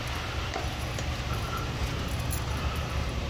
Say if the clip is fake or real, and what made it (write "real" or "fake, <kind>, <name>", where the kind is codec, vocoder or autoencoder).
real